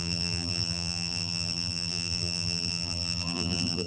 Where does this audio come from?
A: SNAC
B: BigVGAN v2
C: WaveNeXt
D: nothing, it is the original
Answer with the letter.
B